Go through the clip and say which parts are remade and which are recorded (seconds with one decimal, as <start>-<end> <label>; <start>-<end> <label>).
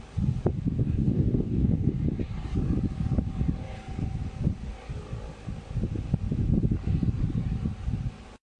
0.0-0.8 recorded; 0.8-1.9 remade; 1.9-8.6 recorded